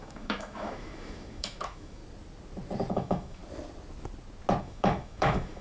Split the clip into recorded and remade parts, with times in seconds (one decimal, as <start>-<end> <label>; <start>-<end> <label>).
0.0-2.0 remade; 2.0-2.9 recorded; 2.9-3.4 remade; 3.4-4.6 recorded; 4.6-5.6 remade